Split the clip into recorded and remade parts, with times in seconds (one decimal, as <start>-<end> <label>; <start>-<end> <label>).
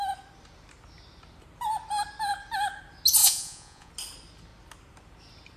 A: 0.0-3.2 recorded; 3.2-3.9 remade; 3.9-5.6 recorded